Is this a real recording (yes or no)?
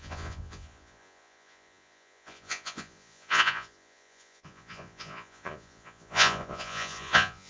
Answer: no